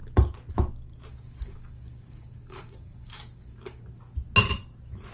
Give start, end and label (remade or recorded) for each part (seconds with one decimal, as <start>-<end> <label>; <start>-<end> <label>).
0.0-1.1 recorded; 1.1-3.8 remade; 3.8-5.1 recorded